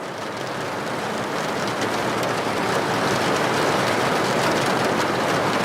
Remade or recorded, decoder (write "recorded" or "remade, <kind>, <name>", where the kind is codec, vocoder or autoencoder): recorded